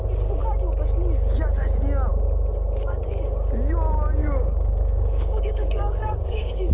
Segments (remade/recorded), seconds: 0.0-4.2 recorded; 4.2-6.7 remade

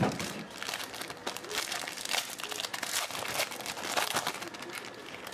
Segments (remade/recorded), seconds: 0.0-5.3 recorded

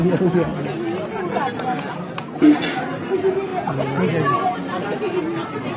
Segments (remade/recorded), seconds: 0.0-5.8 recorded

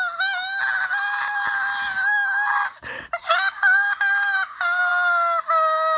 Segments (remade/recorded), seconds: 0.0-6.0 recorded